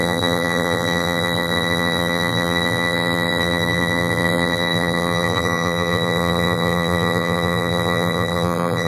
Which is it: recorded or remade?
remade